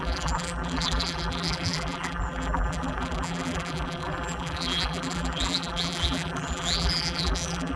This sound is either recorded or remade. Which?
remade